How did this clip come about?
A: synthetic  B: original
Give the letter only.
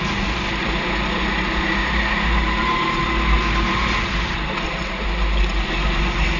B